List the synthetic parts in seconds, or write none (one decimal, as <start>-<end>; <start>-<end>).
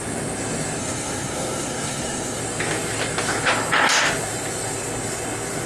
0.8-2.4